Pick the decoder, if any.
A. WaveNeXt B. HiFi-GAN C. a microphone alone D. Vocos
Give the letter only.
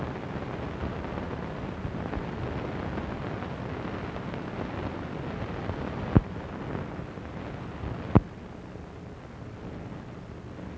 C